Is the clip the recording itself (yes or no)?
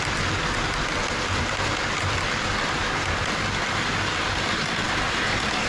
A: yes